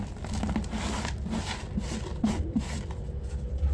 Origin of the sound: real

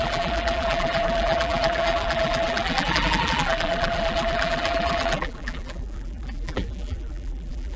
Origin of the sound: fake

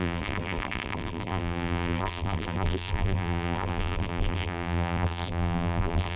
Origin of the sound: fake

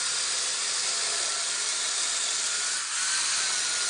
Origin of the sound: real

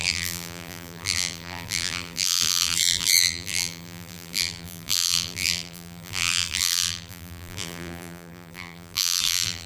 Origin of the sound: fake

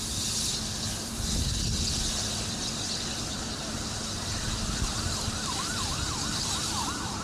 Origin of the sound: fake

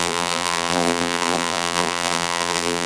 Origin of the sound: fake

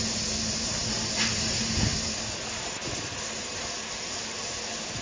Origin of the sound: real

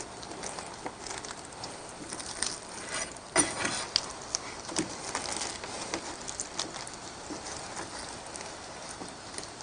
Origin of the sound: real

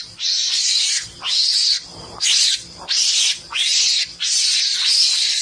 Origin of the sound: fake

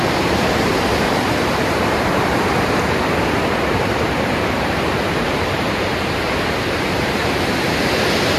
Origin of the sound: fake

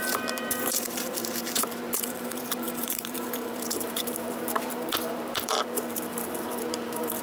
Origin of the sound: fake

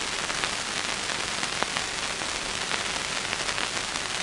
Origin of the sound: real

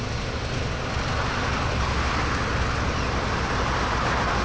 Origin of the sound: real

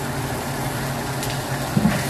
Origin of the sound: real